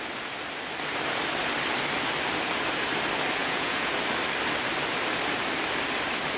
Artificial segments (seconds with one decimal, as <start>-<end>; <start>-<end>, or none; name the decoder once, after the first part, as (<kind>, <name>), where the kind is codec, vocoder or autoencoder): 3.4-3.9 (vocoder, Vocos)